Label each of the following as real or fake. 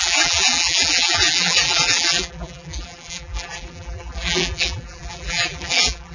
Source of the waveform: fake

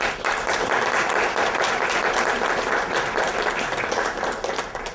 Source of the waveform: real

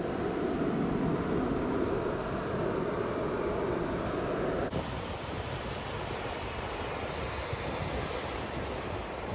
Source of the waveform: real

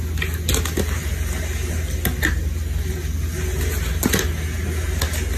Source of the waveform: real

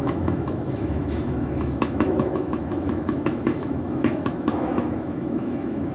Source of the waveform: fake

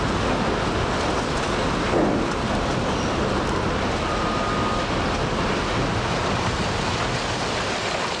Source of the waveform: real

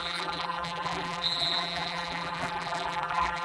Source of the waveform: fake